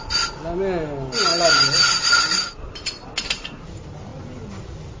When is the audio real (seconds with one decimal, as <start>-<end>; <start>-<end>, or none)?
0.0-5.0